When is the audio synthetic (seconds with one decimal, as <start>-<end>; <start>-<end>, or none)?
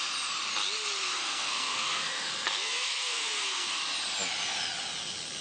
1.1-3.8